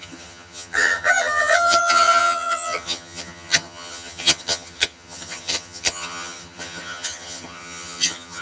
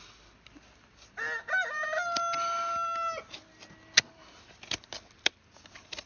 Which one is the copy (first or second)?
first